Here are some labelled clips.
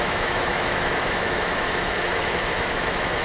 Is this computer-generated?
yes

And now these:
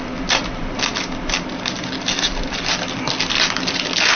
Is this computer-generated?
no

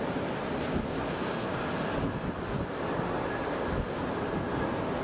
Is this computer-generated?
no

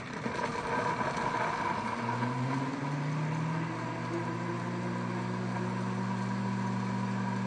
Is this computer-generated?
no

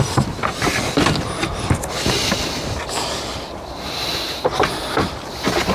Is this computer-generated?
no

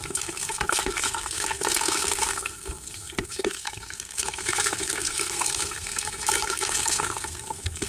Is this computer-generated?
yes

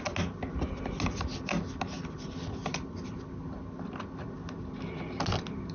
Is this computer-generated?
no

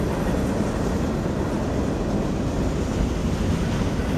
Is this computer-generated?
no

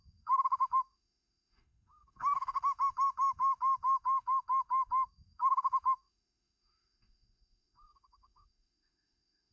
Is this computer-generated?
yes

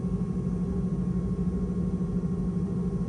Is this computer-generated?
no